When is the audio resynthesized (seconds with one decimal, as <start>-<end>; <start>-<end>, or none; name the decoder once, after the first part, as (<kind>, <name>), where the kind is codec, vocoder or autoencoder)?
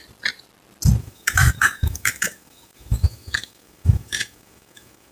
1.0-5.1 (autoencoder, DAC-VAE)